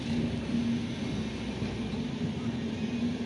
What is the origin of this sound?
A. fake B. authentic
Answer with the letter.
B